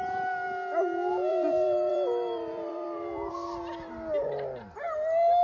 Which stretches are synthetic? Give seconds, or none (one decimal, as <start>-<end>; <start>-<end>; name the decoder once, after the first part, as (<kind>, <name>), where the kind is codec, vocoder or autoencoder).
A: 1.3-3.3 (vocoder, BigVGAN v2)